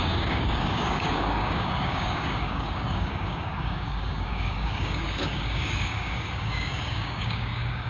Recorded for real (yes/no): no